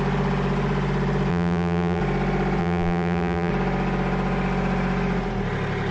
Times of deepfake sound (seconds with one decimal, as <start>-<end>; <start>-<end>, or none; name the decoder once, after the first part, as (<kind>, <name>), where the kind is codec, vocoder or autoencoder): 1.3-2.0 (vocoder, BigVGAN v2); 2.6-3.5